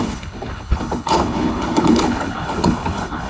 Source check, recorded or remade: remade